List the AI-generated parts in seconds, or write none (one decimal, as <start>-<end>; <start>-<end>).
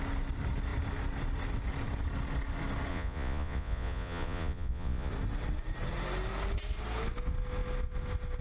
2.9-5.1